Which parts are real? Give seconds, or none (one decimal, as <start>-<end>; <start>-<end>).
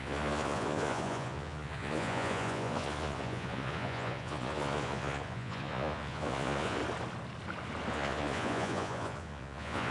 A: 6.8-7.9